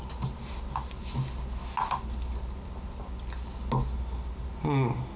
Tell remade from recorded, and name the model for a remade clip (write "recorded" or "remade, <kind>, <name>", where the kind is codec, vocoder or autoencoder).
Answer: recorded